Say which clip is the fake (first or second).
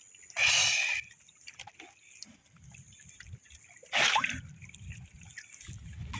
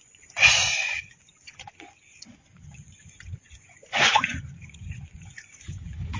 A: second